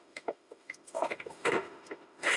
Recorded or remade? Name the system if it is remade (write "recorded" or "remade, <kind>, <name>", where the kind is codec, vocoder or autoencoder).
remade, autoencoder, DAC-VAE